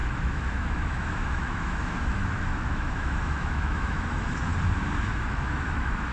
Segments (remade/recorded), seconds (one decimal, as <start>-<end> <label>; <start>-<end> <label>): 0.0-4.5 remade; 4.5-5.1 recorded; 5.1-6.1 remade